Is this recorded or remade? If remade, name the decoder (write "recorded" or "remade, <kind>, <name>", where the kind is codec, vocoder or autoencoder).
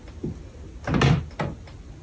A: recorded